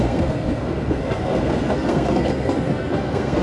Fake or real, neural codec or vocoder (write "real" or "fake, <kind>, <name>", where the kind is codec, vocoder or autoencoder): fake, codec, SNAC